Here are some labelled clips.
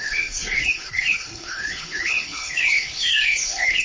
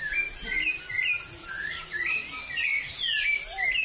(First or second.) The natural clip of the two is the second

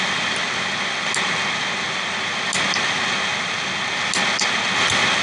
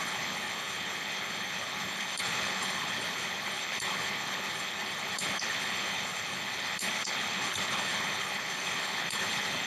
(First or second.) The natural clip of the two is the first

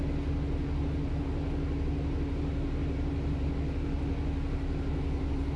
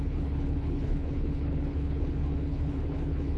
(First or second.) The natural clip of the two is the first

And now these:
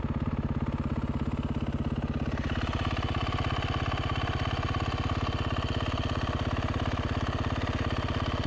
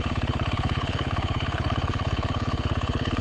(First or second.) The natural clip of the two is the first